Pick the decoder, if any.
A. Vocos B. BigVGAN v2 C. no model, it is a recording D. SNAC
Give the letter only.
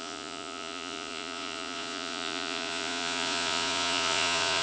A